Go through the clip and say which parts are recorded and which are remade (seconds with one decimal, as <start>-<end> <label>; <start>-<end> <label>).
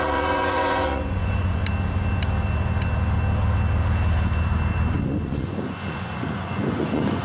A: 0.0-1.6 remade; 1.6-5.0 recorded; 5.0-7.2 remade